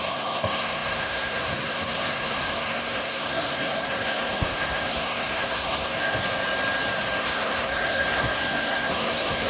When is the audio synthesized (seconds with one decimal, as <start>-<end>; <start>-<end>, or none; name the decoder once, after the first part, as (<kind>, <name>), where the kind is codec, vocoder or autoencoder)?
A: 0.0-6.2 (codec, SNAC); 7.2-9.5